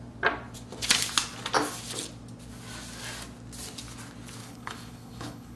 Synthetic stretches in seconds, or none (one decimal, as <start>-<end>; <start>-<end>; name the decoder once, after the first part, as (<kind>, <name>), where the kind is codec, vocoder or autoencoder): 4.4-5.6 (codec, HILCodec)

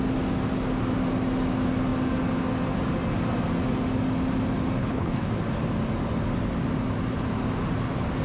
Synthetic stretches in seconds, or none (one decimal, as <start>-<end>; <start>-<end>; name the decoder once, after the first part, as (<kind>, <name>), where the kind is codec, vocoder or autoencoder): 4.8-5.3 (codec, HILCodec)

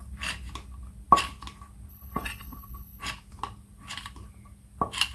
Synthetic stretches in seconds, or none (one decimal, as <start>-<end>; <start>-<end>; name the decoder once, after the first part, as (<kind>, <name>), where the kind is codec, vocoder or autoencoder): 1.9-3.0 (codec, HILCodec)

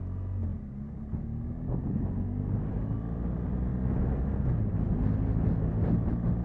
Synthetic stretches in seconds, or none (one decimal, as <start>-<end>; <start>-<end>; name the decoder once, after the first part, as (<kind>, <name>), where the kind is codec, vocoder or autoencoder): none

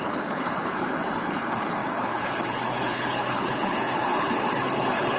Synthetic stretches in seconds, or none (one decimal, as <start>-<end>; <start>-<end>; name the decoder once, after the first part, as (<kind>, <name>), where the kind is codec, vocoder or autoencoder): 0.0-5.2 (codec, HILCodec)

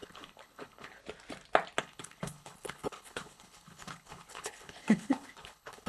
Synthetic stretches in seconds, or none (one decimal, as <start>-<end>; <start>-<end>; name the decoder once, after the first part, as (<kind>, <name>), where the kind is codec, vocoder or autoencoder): 0.0-1.0 (codec, HILCodec); 1.8-5.9